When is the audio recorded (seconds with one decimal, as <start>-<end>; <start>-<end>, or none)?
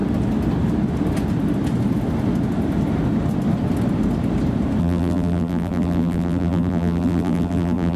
0.0-4.8